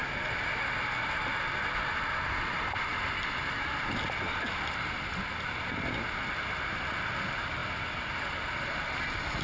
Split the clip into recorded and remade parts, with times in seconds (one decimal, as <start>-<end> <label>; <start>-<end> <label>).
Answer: 0.0-9.4 recorded